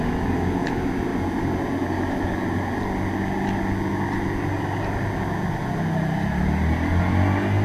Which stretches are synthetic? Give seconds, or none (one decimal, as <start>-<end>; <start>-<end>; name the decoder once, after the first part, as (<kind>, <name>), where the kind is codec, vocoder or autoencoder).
none